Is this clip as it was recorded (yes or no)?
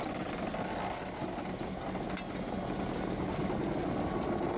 yes